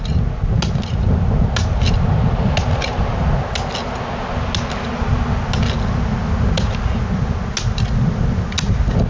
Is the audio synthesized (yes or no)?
no